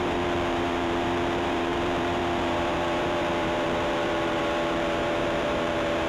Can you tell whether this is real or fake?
fake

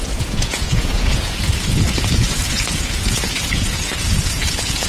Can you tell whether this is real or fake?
fake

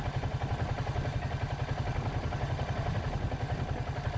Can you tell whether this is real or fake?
real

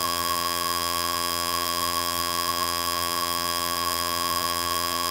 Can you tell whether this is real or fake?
fake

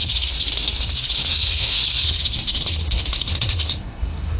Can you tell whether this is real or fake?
fake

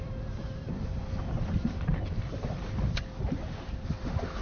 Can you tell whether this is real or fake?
fake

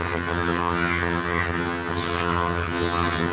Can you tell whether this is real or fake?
fake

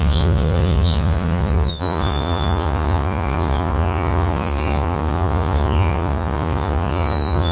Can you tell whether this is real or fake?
fake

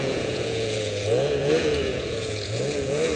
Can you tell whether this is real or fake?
fake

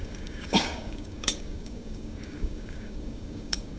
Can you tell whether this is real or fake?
fake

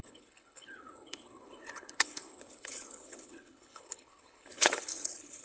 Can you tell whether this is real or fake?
fake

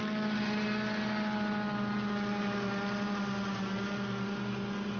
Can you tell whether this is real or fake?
real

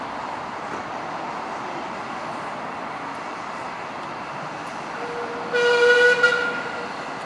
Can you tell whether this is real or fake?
real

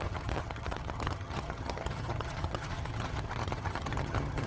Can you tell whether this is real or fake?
fake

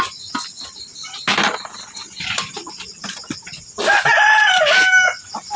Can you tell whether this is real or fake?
real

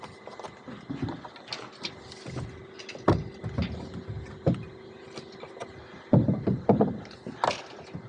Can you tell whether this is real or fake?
real